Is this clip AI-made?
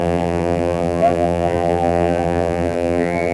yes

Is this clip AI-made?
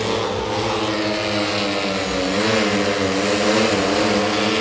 no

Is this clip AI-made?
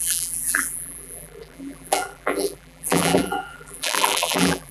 yes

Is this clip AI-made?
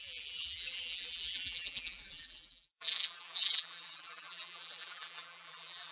yes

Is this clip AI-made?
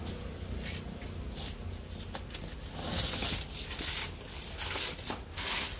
no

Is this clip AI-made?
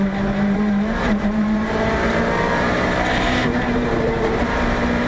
yes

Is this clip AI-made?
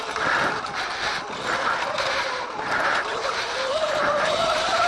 yes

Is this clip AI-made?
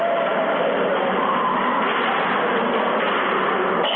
no